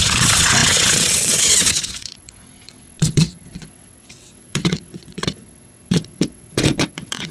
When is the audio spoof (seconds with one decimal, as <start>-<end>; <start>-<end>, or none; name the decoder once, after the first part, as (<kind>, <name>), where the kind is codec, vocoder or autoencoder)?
0.0-7.3 (vocoder, WaveNeXt)